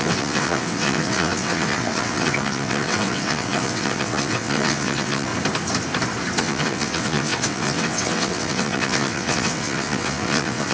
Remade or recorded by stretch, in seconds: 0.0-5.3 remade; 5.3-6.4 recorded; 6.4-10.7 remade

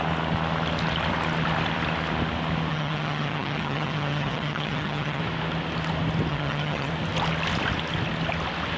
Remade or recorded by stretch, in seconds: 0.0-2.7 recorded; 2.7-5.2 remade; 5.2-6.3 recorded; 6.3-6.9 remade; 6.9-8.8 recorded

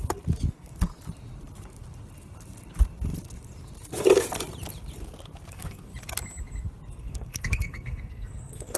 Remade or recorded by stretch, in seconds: 0.0-0.5 recorded; 0.5-0.9 remade; 0.9-5.5 recorded; 5.5-5.9 remade; 5.9-7.0 recorded; 7.0-8.8 remade